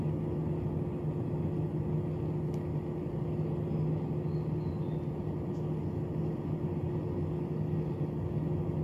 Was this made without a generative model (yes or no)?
yes